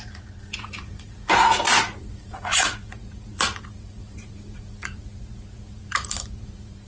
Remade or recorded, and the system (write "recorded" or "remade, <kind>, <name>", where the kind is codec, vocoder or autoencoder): remade, vocoder, Vocos